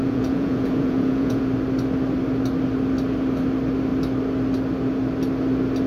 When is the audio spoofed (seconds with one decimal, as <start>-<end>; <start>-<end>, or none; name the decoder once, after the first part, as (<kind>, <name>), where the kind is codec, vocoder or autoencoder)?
0.0-1.4 (vocoder, Vocos)